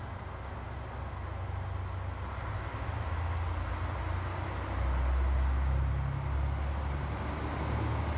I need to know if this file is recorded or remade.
recorded